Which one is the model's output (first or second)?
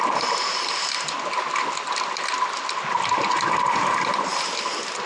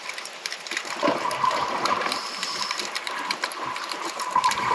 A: second